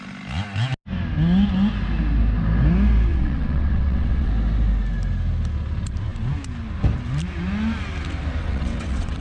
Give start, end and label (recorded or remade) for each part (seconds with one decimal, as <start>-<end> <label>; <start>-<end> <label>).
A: 0.0-3.1 recorded; 3.1-4.3 remade; 4.3-8.4 recorded; 8.4-9.2 remade